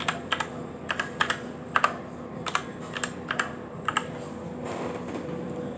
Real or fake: real